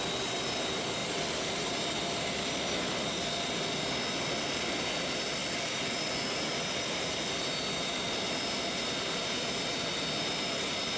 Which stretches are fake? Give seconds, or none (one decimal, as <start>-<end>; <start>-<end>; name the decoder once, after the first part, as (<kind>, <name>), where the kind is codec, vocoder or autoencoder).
none